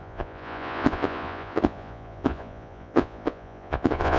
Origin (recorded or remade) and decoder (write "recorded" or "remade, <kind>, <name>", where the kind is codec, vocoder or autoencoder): remade, vocoder, Vocos